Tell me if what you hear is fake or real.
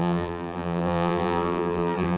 fake